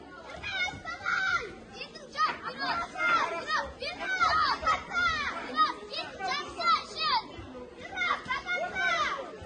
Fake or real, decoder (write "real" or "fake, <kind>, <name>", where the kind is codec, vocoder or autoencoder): real